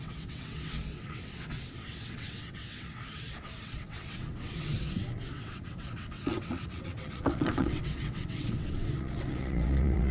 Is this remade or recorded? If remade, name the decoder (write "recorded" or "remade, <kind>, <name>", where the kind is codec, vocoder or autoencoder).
remade, vocoder, WaveNeXt